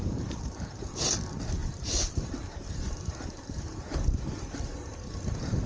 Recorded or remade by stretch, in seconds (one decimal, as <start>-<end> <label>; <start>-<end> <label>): 0.0-0.9 remade; 0.9-1.6 recorded; 1.6-3.6 remade; 3.6-5.7 recorded